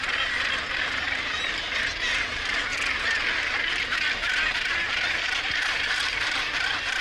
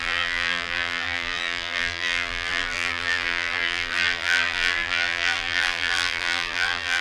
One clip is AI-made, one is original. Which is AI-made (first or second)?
second